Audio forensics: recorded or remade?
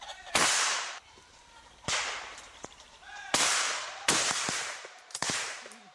remade